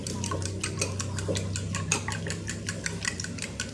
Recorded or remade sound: recorded